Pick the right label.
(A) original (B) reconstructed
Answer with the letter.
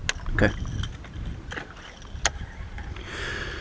A